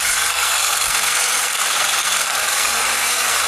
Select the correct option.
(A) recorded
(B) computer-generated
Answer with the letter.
B